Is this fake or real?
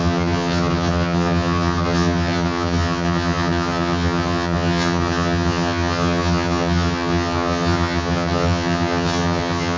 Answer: fake